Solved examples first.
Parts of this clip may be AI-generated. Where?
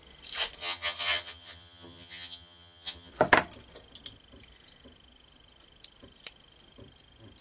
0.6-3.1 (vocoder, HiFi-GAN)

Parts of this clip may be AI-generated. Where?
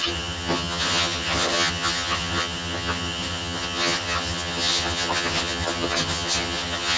0.0-7.0 (vocoder, HiFi-GAN)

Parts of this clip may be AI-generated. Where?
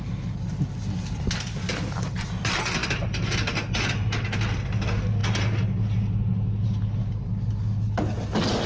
none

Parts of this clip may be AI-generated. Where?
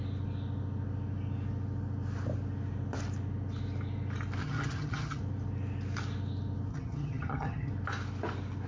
4.4-5.2 (vocoder, HiFi-GAN); 6.7-7.7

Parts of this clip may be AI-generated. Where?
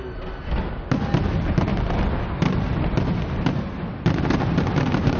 none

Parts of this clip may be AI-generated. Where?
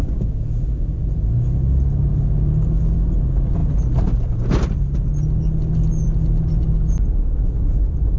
none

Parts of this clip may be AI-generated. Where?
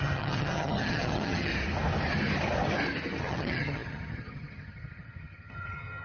0.0-1.5 (vocoder, HiFi-GAN); 3.2-6.0